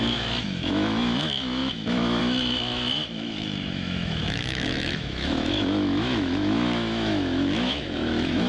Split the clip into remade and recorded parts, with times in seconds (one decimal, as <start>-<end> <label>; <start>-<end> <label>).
0.0-8.5 remade